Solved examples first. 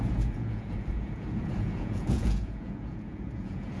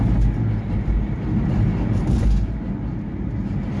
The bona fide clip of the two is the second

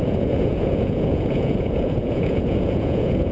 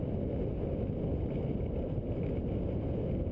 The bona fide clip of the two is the second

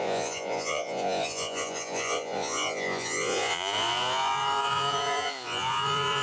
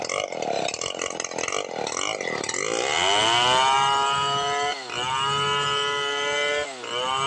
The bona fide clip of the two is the second